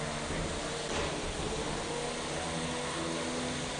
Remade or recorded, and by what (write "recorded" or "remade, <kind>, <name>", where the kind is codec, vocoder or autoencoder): recorded